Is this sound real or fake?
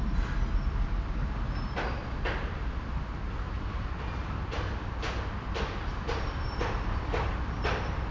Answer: real